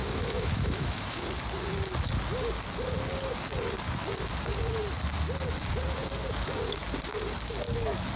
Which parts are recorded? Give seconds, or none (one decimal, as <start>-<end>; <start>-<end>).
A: 1.2-8.2